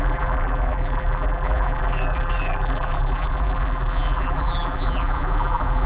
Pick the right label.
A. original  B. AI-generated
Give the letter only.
B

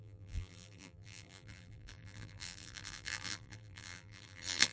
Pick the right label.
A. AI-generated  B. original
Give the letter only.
A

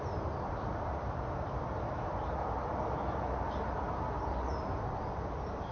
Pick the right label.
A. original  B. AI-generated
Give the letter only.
B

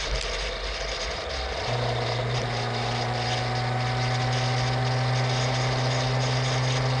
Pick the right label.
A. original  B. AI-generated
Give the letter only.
A